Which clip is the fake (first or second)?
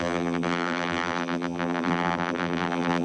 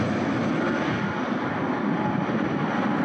first